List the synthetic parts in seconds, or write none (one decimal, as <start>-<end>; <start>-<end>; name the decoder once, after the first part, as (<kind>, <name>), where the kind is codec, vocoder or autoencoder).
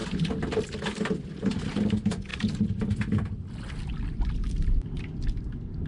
none